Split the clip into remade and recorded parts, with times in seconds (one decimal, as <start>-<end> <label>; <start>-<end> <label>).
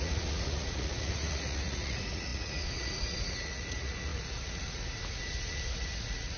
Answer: 0.0-6.4 remade